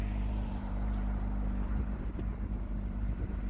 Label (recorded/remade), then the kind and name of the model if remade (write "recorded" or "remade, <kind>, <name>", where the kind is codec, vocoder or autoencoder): remade, vocoder, BigVGAN v2